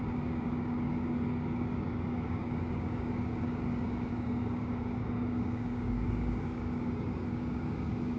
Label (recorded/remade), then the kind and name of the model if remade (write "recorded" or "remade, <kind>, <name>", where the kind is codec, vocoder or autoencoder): remade, codec, DAC